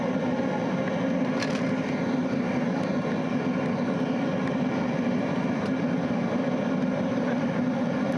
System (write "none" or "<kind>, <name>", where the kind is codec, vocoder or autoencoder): none